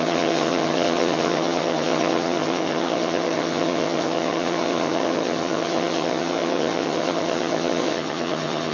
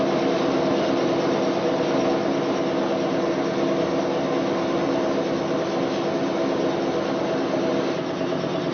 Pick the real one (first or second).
second